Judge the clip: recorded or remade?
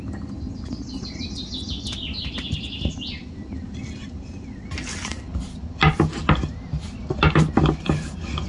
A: recorded